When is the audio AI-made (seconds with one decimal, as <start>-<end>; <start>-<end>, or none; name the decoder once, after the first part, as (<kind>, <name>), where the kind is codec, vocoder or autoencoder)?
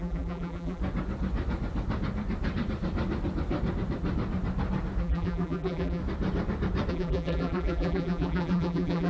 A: 0.0-0.8 (vocoder, BigVGAN v2); 5.0-6.0; 6.9-9.1